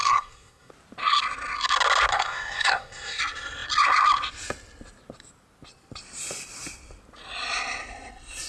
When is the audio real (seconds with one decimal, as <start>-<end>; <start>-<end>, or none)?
0.7-2.1; 3.2-8.5